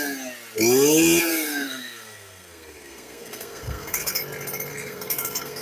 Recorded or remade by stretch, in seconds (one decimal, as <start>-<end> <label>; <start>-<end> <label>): 0.0-1.3 recorded; 1.3-4.2 remade; 4.2-4.7 recorded; 4.7-5.6 remade